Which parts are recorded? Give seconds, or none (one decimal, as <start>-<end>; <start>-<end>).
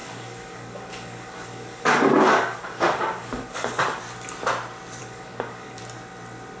4.0-5.0; 5.8-6.6